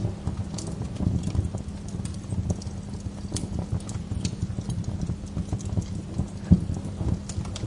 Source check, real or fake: real